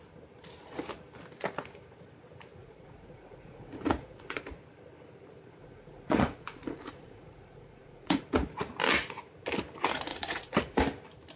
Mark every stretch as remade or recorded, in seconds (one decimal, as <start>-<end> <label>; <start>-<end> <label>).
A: 0.0-2.6 recorded; 2.6-4.4 remade; 4.4-5.6 recorded; 5.6-8.2 remade; 8.2-10.1 recorded; 10.1-10.8 remade; 10.8-11.4 recorded